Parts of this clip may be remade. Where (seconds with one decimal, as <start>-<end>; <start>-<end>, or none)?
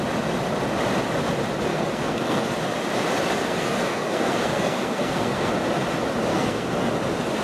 1.7-2.5; 3.4-5.5; 6.3-6.9